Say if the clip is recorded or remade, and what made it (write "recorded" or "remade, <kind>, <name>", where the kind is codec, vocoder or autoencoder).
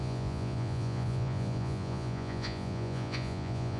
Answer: remade, vocoder, Vocos